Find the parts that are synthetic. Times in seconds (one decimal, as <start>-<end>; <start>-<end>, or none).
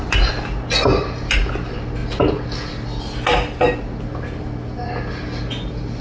none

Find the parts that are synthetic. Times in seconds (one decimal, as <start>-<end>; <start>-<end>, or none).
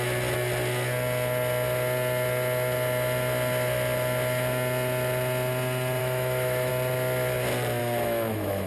6.0-6.7; 7.8-8.7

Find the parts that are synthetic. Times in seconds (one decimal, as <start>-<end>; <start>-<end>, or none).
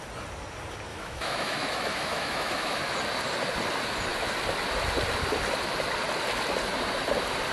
0.9-2.8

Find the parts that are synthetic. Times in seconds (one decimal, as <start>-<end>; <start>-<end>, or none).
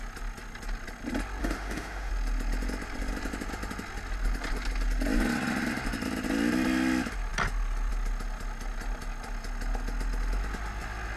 1.4-2.1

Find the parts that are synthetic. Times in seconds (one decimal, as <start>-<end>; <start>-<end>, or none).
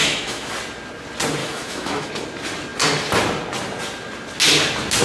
0.0-0.5; 1.4-2.1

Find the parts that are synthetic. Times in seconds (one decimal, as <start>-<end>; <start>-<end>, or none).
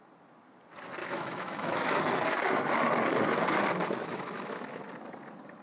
1.0-2.0; 4.0-4.8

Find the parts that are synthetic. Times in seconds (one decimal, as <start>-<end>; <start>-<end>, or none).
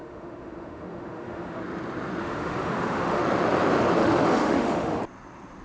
0.0-1.6; 2.2-3.2; 4.0-5.0